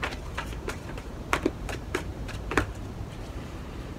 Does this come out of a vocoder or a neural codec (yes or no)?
yes